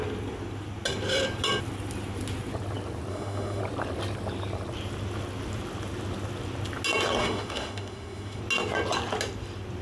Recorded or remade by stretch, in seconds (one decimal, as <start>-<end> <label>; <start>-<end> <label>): 0.0-3.1 recorded; 3.1-3.6 remade; 3.6-7.2 recorded; 7.2-8.4 remade; 8.4-9.8 recorded